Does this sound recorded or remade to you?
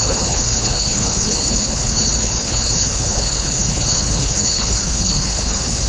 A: remade